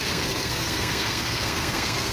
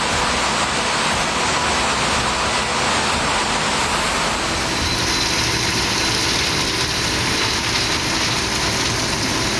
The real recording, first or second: second